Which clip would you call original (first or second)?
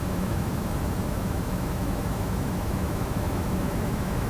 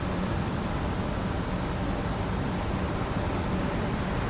second